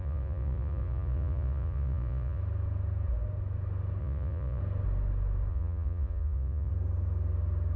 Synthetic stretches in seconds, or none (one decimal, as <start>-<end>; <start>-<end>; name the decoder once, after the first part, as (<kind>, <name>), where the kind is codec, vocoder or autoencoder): 0.0-2.4 (vocoder, Vocos); 4.0-4.6; 5.5-6.7